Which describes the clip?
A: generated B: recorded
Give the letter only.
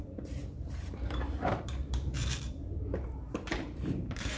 A